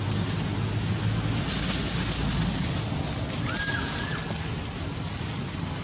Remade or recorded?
recorded